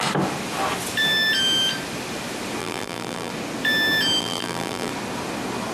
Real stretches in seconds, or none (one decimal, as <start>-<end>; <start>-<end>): 0.0-2.6; 3.3-4.2; 4.9-5.7